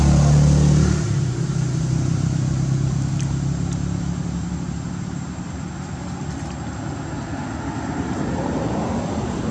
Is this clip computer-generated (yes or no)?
no